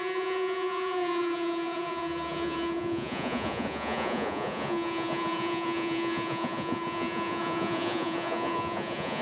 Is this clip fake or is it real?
fake